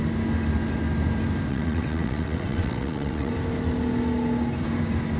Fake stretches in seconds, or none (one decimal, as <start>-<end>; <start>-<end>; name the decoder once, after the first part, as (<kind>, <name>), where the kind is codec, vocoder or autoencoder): 1.5-3.3 (vocoder, WaveNeXt)